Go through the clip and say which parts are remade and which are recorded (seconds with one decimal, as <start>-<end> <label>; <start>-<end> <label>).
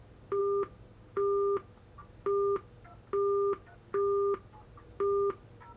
0.0-5.8 recorded